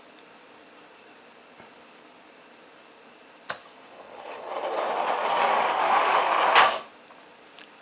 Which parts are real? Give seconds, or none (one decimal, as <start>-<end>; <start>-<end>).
0.0-3.6; 4.4-5.5; 6.3-7.8